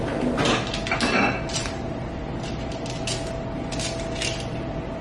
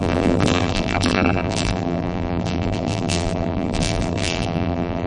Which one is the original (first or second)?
first